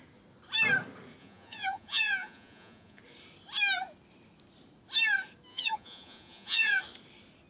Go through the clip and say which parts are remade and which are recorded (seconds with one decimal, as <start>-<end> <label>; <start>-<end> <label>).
0.0-1.2 recorded; 1.2-3.0 remade; 3.0-5.5 recorded; 5.5-6.8 remade; 6.8-7.5 recorded